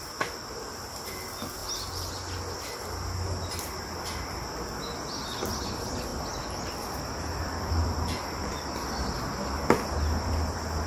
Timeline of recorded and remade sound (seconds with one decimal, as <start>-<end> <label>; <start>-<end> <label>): 0.0-6.1 recorded; 6.1-10.3 remade; 10.3-10.9 recorded